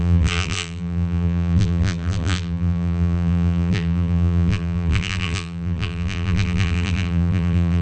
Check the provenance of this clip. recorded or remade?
remade